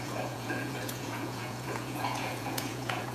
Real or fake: fake